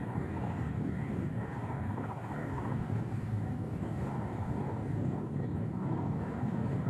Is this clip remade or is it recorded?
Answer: remade